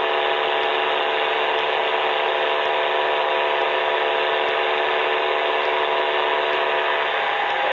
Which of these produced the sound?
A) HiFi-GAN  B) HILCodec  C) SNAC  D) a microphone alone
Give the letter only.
D